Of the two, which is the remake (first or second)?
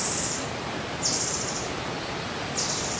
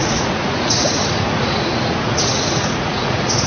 second